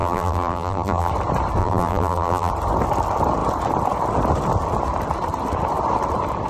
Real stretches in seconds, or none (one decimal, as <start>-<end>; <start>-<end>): 1.1-1.6; 2.5-6.5